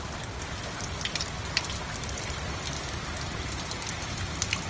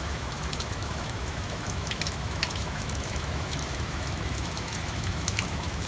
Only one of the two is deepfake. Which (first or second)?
second